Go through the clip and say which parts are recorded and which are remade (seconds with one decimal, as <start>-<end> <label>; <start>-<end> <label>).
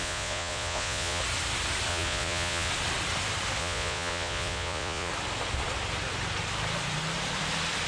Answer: 0.0-1.2 remade; 1.2-1.9 recorded; 1.9-2.7 remade; 2.7-3.6 recorded; 3.6-5.1 remade; 5.1-7.9 recorded